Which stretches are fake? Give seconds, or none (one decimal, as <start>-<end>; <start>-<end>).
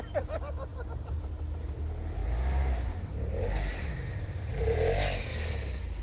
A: 0.7-1.2; 2.2-4.5